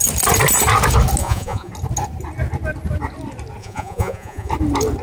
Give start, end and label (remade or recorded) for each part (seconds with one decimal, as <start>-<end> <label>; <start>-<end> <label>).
0.0-1.2 recorded; 1.2-1.7 remade; 1.7-3.6 recorded; 3.6-4.5 remade; 4.5-5.0 recorded